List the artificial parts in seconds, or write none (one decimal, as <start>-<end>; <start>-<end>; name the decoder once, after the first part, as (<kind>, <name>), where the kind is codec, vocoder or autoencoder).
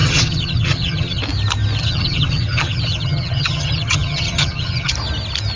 0.0-1.2 (vocoder, HiFi-GAN); 1.8-4.9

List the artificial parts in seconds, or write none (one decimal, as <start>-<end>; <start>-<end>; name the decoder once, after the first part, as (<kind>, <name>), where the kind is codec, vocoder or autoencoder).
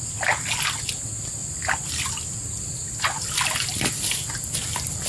none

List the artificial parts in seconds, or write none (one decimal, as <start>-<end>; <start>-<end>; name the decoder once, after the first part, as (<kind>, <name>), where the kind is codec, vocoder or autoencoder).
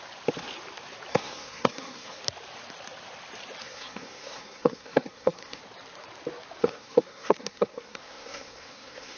1.1-2.2 (codec, SNAC); 3.6-5.6; 6.6-9.2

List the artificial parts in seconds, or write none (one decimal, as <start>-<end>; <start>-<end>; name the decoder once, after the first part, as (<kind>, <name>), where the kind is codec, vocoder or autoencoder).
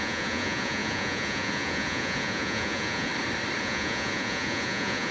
0.0-3.1 (vocoder, Vocos); 3.6-5.1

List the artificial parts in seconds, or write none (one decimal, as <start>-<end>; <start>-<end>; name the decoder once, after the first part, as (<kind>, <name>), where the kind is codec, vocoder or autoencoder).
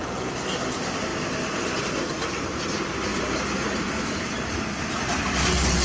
none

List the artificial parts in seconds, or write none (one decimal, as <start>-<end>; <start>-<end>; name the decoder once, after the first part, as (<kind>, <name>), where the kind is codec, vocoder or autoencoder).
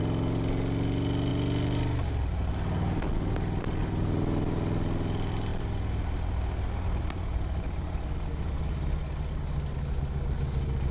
5.5-8.5 (vocoder, BigVGAN v2)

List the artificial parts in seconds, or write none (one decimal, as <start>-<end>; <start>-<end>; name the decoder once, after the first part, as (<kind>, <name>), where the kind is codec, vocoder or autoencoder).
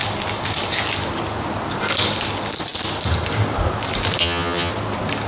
4.2-4.7 (vocoder, HiFi-GAN)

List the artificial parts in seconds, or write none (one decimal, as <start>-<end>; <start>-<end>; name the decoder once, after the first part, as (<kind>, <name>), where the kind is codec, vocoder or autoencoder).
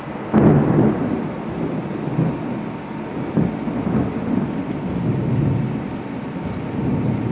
none